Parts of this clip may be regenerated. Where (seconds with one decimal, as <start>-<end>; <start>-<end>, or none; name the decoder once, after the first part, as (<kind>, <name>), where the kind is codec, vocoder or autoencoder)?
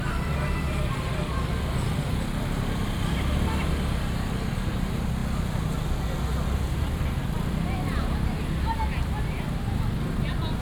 none